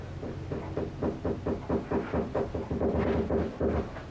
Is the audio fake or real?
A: real